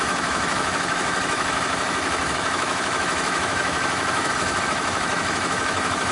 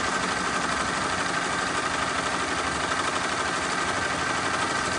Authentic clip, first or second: second